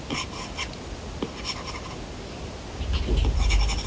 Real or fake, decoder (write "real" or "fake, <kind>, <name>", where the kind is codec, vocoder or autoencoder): real